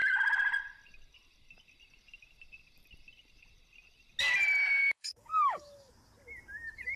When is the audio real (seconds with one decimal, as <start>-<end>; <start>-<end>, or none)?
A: 0.0-4.8; 5.9-7.0